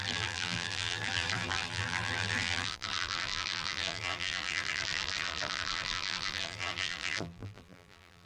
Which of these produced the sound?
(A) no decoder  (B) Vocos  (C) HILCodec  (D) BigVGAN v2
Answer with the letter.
D